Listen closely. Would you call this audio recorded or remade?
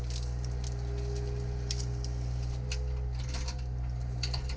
recorded